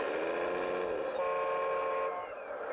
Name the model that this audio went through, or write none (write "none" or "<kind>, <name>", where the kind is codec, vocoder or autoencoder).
none